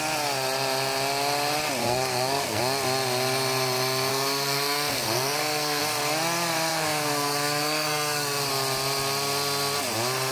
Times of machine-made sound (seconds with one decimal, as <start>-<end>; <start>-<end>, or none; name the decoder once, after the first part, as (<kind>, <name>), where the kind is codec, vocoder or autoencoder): 1.8-2.6 (codec, SNAC); 4.1-5.8; 6.7-8.5